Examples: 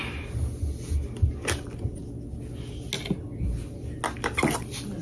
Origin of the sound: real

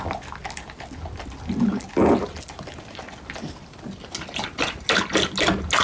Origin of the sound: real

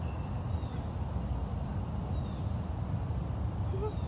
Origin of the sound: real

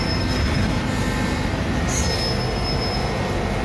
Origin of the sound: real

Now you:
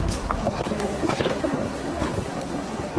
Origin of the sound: fake